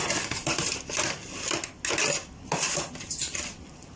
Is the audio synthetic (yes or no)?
no